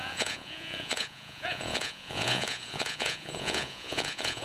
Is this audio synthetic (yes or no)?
yes